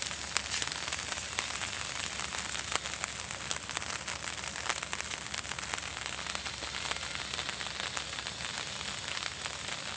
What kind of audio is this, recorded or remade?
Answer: recorded